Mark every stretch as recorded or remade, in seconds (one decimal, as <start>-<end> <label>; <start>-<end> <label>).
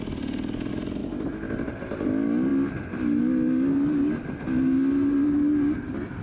0.0-6.2 recorded